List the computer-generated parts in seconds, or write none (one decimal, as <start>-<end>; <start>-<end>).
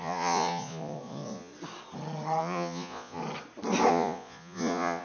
0.0-1.5; 2.4-3.2; 3.9-5.0